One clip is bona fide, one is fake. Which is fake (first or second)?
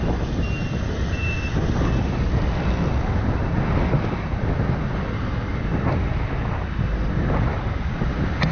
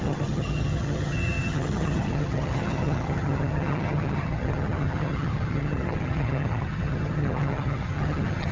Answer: second